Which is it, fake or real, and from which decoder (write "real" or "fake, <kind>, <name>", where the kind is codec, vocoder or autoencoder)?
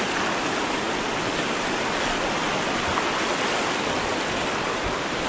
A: real